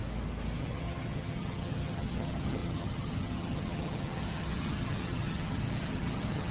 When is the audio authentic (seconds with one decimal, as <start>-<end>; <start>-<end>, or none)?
0.0-0.6